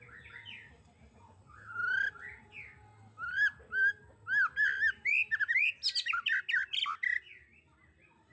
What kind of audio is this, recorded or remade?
recorded